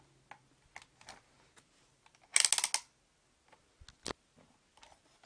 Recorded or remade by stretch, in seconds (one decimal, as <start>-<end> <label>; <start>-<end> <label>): 0.0-5.3 recorded